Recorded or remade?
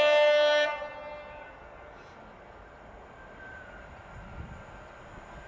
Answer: recorded